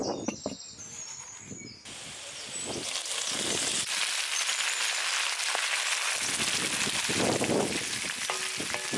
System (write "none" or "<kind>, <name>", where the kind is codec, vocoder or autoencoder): none